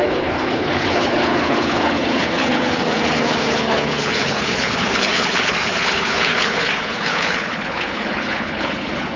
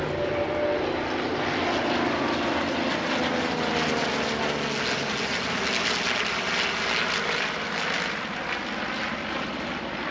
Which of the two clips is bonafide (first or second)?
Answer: second